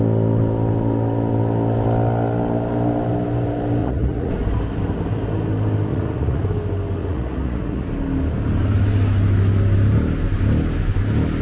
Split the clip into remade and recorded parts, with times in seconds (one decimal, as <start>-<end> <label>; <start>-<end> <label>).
0.0-3.8 recorded; 3.8-4.3 remade; 4.3-5.9 recorded; 5.9-6.4 remade; 6.4-7.0 recorded; 7.0-7.9 remade; 7.9-11.4 recorded

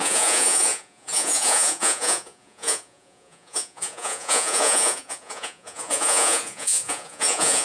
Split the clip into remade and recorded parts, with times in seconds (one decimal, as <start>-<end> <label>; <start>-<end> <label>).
0.0-7.6 remade

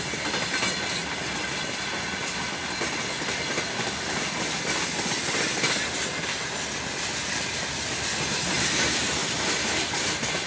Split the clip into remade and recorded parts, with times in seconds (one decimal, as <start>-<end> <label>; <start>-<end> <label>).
0.0-10.5 recorded

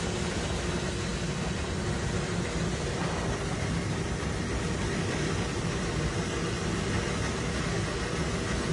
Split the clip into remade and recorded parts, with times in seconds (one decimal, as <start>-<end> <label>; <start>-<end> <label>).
0.0-8.7 recorded